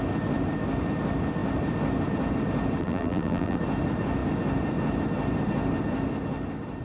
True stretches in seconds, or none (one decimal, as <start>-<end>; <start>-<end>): 0.0-2.8; 3.6-6.8